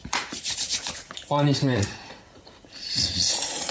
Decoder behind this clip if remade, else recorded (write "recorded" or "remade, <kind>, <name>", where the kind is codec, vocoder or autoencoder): remade, vocoder, Vocos